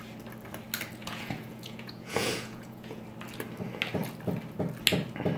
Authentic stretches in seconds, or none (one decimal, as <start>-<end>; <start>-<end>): 0.0-1.0; 3.0-5.4